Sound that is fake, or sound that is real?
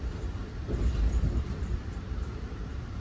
fake